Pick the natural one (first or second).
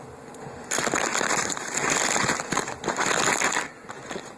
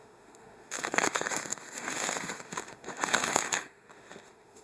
first